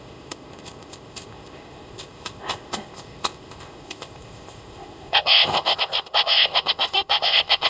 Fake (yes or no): yes